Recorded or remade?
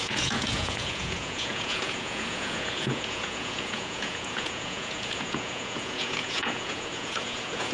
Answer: remade